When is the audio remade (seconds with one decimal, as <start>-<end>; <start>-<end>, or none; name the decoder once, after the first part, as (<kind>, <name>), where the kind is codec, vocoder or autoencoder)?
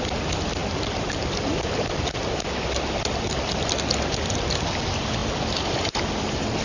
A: none